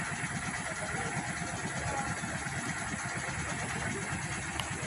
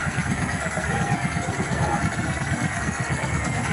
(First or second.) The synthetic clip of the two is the second